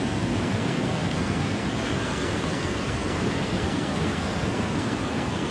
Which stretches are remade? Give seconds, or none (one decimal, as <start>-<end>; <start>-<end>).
0.0-5.5